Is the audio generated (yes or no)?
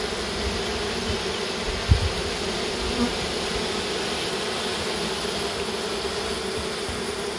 no